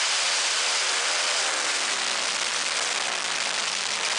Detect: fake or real real